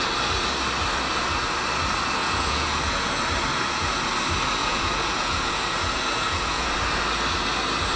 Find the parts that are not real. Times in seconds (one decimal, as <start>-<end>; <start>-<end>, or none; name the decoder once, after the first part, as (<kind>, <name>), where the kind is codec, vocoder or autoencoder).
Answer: 2.2-3.1 (vocoder, Vocos); 3.5-4.0; 4.6-6.7